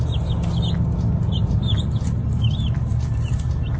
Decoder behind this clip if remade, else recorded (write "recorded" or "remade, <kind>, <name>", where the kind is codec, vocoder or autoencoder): recorded